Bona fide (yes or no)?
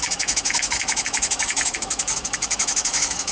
no